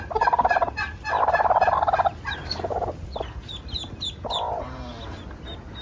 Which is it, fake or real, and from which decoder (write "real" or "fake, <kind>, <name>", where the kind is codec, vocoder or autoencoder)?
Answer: real